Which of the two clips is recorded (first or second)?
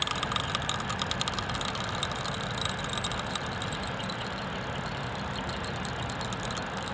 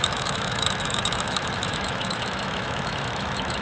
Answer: first